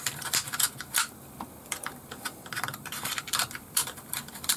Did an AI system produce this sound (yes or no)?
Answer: yes